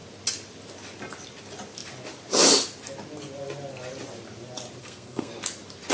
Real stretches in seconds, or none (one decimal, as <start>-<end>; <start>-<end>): 0.0-4.8; 5.3-5.9

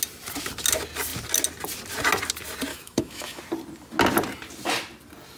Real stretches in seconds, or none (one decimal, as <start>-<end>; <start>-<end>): 0.0-2.7; 3.4-5.4

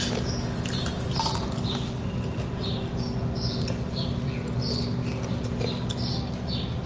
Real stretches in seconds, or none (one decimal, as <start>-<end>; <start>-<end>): 0.0-6.9

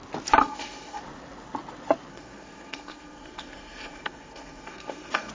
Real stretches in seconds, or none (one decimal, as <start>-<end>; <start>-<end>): 0.0-0.4; 1.0-2.1

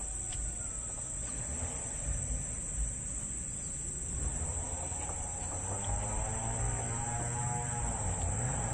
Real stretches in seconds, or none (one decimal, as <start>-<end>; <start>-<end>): 0.0-8.7